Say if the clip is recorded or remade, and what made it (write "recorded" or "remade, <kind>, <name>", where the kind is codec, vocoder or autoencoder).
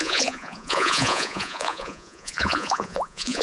remade, vocoder, Vocos